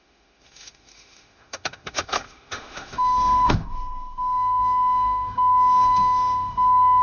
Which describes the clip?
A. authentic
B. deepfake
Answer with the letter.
B